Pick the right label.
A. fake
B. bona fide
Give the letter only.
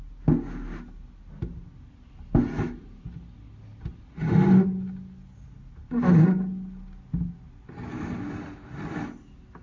B